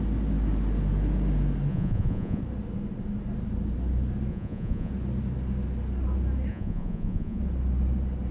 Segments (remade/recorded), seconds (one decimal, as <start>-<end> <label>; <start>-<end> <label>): 0.0-1.7 recorded; 1.7-2.4 remade; 2.4-4.3 recorded; 4.3-4.9 remade; 4.9-6.5 recorded; 6.5-7.4 remade; 7.4-8.3 recorded